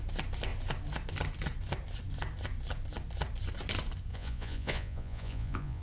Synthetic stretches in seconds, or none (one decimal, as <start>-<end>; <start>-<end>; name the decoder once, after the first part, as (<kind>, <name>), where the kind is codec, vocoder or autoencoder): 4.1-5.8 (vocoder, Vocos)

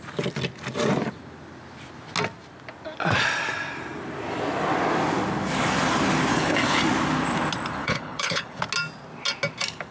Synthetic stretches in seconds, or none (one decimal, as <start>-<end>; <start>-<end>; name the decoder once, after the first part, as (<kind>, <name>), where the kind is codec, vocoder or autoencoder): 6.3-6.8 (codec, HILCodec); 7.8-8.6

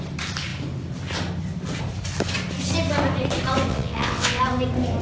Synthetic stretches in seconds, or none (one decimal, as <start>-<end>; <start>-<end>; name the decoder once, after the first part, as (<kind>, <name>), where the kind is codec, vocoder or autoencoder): 3.7-4.4 (vocoder, WaveNeXt)

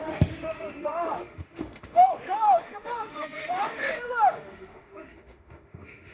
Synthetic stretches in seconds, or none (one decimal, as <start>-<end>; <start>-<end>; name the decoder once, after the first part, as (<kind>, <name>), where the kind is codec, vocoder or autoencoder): 0.0-6.1 (autoencoder, DAC-VAE)

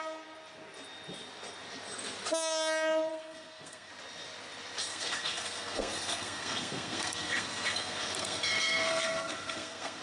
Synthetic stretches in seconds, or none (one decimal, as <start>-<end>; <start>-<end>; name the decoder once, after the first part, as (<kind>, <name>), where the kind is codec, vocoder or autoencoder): 3.1-3.9 (codec, SNAC); 4.9-10.0

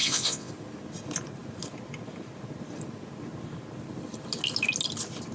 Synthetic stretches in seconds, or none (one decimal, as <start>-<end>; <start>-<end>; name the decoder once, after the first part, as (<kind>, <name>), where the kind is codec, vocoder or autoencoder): 0.0-0.5 (vocoder, WaveNeXt)

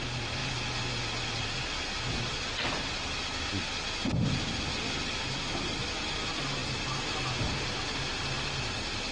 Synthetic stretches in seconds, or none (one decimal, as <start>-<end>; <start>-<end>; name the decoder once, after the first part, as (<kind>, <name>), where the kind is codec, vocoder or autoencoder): none

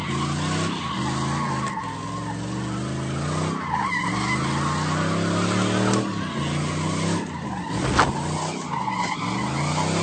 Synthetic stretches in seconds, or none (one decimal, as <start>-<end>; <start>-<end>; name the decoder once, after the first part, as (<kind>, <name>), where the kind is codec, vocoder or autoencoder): none